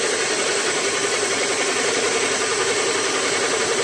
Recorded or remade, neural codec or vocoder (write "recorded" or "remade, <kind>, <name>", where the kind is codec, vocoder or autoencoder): remade, vocoder, BigVGAN v2